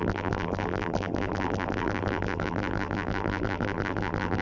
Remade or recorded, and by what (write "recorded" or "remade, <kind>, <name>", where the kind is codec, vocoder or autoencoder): remade, vocoder, BigVGAN v2